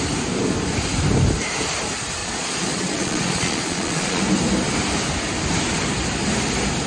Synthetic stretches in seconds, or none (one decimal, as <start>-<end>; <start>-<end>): 2.2-4.2